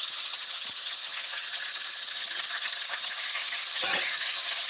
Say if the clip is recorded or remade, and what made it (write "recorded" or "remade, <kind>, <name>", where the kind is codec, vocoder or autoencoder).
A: remade, vocoder, HiFi-GAN